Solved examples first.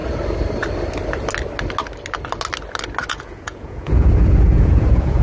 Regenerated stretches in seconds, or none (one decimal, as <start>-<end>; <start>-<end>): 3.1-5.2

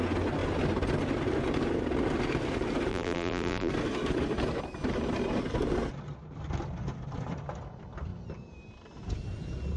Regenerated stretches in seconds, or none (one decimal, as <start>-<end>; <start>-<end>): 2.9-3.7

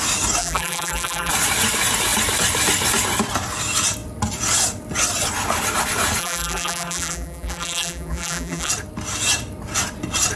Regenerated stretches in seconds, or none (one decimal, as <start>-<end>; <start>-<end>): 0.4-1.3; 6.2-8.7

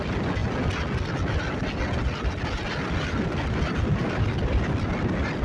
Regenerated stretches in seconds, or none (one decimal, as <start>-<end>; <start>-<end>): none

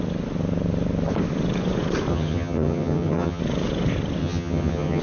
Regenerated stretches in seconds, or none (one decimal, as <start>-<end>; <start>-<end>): 2.1-3.4; 4.2-5.0

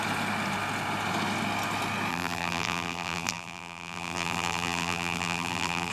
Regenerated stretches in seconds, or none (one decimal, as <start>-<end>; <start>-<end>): 2.1-5.9

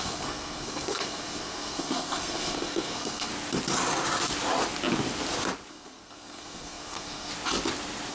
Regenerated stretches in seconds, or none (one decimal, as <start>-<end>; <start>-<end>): 0.0-3.3; 5.7-7.3